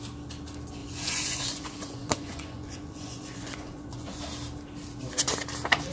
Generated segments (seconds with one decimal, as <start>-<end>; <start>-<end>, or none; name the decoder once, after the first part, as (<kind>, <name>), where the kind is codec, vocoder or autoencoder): 0.8-4.2 (vocoder, Vocos)